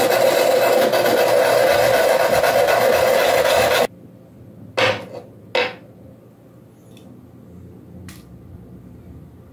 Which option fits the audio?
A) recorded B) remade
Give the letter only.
A